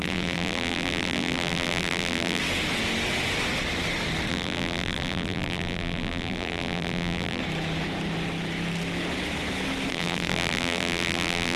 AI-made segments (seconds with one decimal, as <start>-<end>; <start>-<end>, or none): 0.0-2.4; 4.3-7.4; 9.9-11.6